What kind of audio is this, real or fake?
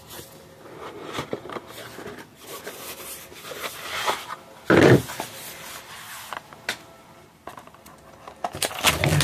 real